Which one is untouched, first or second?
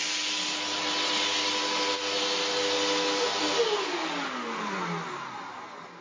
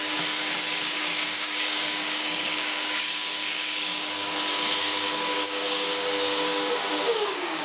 first